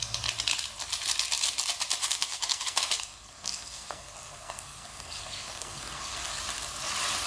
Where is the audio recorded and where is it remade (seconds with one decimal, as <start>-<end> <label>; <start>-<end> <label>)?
0.0-2.0 recorded; 2.0-6.4 remade; 6.4-7.3 recorded